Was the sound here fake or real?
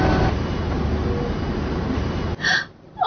real